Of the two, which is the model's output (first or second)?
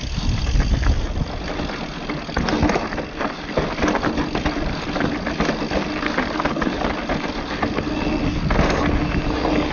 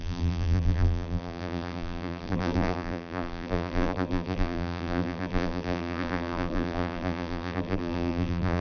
second